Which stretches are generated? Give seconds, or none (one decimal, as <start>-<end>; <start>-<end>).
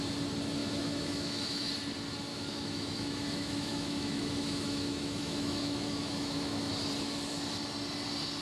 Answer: 0.6-1.7; 2.3-6.7